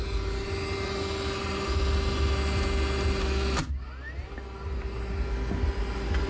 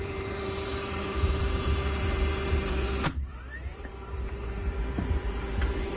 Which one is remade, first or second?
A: second